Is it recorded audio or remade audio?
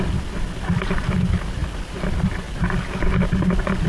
recorded